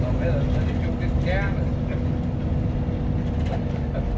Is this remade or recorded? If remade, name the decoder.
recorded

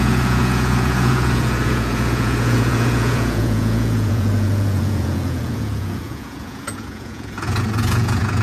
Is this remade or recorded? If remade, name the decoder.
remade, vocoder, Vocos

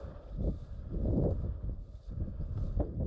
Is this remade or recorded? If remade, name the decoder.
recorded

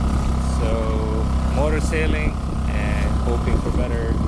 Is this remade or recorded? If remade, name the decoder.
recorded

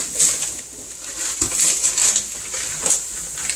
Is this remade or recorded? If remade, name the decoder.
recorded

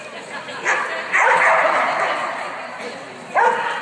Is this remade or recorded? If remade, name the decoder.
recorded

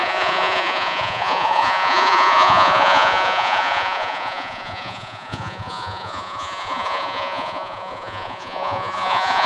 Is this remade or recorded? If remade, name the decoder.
remade, vocoder, Vocos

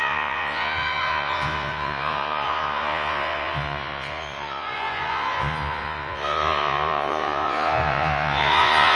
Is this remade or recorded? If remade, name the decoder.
remade, vocoder, Vocos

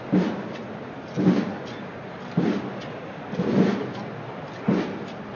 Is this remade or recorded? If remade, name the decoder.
recorded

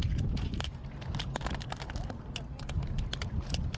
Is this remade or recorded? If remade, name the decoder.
recorded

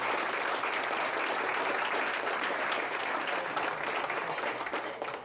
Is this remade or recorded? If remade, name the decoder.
recorded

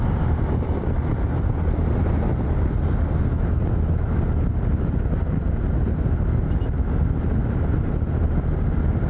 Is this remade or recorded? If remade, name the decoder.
recorded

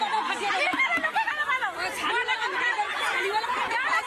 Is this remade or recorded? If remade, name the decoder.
recorded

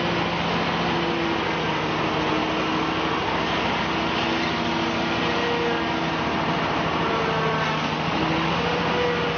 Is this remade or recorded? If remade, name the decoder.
recorded